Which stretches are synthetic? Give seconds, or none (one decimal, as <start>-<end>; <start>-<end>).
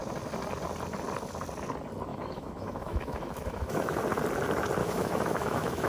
2.1-4.0; 4.8-5.9